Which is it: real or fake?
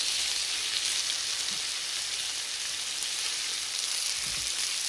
real